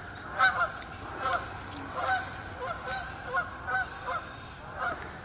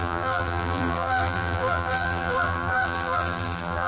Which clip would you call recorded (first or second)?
first